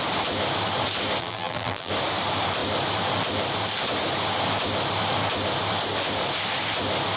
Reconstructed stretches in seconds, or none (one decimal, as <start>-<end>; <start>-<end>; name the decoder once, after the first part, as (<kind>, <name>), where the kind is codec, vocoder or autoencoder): 1.2-1.9 (vocoder, BigVGAN v2)